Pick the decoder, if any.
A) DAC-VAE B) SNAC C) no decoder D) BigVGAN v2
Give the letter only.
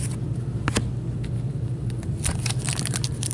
C